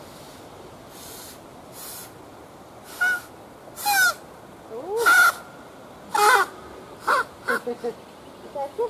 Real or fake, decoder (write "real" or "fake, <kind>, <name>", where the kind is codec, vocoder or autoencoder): real